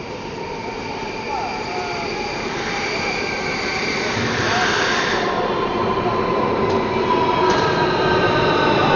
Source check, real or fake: real